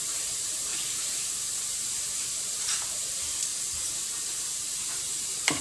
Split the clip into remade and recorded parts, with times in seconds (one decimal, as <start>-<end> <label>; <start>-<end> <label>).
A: 0.0-0.7 remade; 0.7-2.6 recorded; 2.6-3.5 remade; 3.5-4.8 recorded; 4.8-5.6 remade